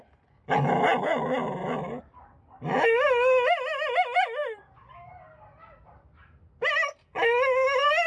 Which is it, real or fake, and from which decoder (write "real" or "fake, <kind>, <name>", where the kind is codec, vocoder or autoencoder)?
real